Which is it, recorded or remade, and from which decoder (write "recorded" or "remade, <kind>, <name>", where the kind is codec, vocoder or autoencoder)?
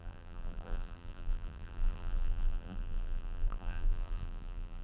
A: remade, vocoder, BigVGAN v2